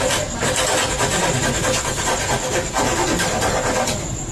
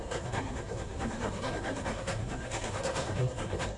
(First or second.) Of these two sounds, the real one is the first